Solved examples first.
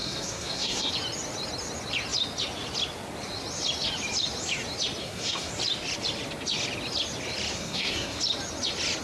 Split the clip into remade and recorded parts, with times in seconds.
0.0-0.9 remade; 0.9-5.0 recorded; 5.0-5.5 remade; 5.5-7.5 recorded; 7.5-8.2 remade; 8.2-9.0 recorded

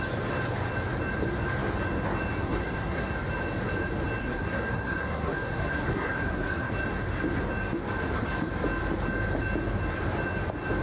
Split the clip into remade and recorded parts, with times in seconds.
0.0-2.4 recorded; 2.4-3.1 remade; 3.1-4.2 recorded; 4.2-6.7 remade; 6.7-10.8 recorded

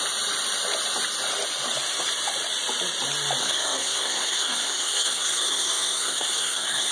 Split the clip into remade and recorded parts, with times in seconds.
0.0-3.4 recorded; 3.4-6.9 remade